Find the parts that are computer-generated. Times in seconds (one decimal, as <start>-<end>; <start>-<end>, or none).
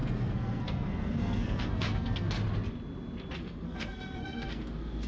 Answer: 0.0-2.4; 3.4-5.1